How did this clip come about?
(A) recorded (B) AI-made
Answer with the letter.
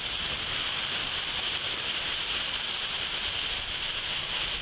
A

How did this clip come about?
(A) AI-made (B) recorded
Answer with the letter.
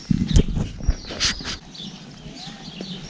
B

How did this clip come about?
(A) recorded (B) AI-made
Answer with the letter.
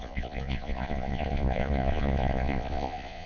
B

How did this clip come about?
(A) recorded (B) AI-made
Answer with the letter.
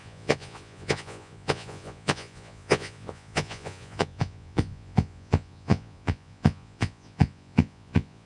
B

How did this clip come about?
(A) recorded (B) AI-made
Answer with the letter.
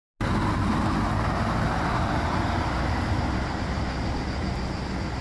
A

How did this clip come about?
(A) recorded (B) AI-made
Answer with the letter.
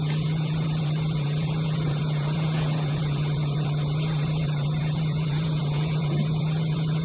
B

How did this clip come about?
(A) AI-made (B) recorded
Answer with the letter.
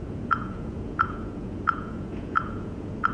A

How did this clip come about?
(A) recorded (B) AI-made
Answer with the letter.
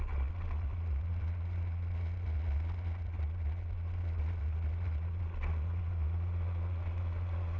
B